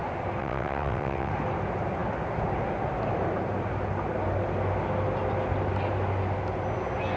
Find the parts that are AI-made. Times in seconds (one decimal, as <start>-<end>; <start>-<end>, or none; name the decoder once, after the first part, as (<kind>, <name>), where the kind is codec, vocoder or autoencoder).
0.4-1.3 (vocoder, WaveNeXt)